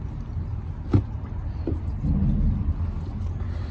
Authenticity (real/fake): real